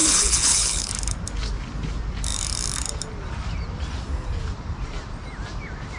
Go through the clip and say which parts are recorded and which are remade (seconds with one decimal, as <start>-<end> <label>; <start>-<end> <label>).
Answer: 0.0-0.9 remade; 0.9-6.0 recorded

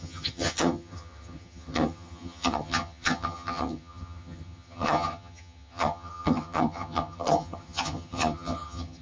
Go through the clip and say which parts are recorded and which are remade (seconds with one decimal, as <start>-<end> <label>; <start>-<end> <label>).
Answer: 0.0-9.0 remade

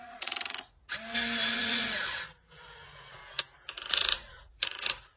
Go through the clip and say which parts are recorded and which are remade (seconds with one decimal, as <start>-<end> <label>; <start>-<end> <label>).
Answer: 0.0-0.9 remade; 0.9-1.5 recorded; 1.5-3.2 remade; 3.2-3.9 recorded; 3.9-5.2 remade